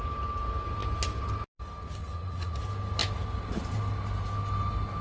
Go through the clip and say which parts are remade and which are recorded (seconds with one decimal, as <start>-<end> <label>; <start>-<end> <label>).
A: 0.0-2.0 recorded; 2.0-2.6 remade; 2.6-5.0 recorded